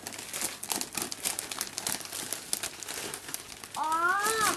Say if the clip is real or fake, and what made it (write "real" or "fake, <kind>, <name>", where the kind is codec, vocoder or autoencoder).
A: real